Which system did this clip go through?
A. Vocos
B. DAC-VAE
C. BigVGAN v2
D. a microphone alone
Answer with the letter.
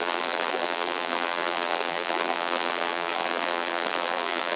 C